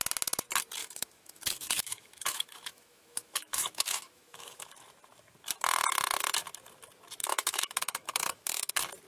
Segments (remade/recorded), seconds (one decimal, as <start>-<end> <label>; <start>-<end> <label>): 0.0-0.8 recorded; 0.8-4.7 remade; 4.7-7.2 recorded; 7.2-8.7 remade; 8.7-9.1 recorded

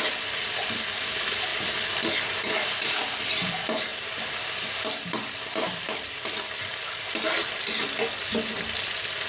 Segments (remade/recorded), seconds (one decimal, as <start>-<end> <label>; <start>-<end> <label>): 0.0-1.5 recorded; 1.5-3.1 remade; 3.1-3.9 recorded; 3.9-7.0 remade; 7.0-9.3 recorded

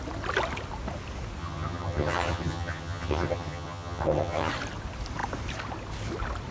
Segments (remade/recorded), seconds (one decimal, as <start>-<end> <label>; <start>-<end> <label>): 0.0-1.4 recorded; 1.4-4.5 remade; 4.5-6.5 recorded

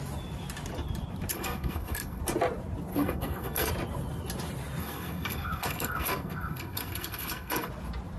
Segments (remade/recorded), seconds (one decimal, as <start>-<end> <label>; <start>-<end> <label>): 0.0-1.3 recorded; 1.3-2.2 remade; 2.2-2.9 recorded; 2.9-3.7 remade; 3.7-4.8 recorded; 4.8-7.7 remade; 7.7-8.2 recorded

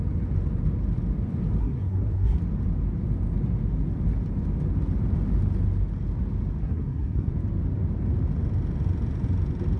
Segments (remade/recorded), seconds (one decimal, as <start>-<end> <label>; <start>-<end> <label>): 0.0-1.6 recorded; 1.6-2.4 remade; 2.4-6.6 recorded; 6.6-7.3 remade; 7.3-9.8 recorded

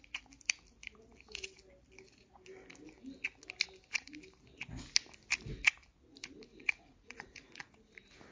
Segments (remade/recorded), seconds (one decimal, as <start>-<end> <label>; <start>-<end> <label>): 0.0-6.5 recorded; 6.5-7.5 remade; 7.5-8.3 recorded

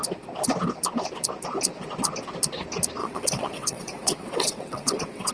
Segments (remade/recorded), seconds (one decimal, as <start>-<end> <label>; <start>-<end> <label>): 0.0-3.0 recorded; 3.0-5.3 remade